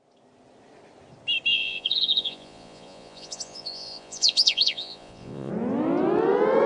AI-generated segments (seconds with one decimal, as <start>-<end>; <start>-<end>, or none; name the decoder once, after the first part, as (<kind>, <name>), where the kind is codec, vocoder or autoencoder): 1.5-5.5 (vocoder, Vocos)